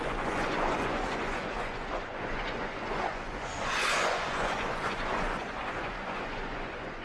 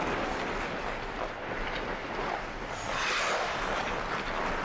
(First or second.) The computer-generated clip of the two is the first